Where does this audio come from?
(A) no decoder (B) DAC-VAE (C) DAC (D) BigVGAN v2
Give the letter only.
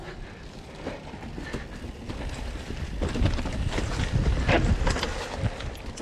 A